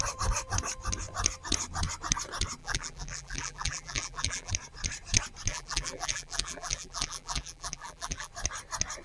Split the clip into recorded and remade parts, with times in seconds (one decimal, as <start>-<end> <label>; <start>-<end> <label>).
0.0-2.6 recorded; 2.6-4.5 remade; 4.5-5.5 recorded; 5.5-8.3 remade; 8.3-9.0 recorded

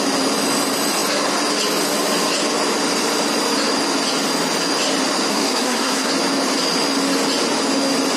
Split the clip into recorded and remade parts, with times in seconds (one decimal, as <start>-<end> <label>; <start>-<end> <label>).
0.0-5.3 recorded; 5.3-6.1 remade; 6.1-8.2 recorded

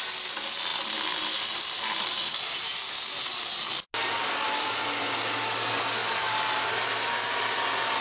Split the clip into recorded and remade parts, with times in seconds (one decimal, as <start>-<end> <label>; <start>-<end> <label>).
0.0-8.0 recorded

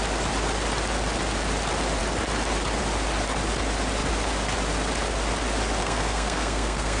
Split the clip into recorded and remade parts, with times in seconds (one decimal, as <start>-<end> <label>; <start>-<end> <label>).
0.0-5.8 recorded; 5.8-7.0 remade